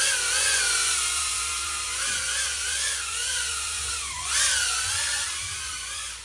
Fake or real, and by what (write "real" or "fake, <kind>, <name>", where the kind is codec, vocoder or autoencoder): fake, vocoder, Vocos